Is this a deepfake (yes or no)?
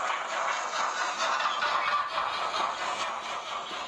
no